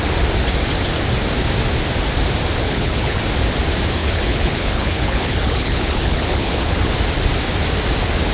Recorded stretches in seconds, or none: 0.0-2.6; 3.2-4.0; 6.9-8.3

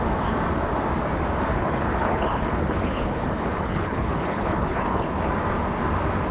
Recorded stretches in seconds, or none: 0.0-1.5; 5.3-6.3

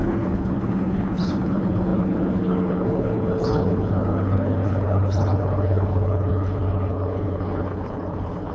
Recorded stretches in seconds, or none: none

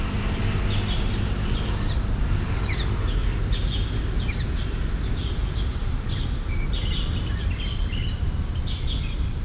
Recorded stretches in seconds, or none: 0.0-9.4